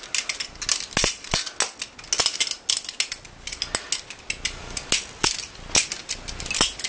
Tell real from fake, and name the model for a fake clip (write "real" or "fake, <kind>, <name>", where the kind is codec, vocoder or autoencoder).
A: real